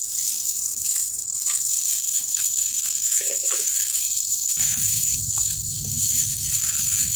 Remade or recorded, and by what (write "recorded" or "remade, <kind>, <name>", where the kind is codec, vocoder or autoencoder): remade, codec, SNAC